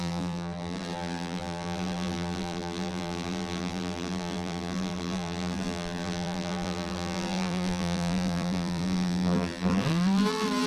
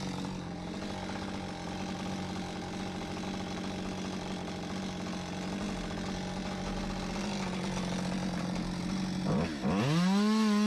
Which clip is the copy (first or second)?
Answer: first